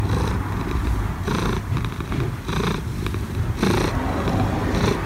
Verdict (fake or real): real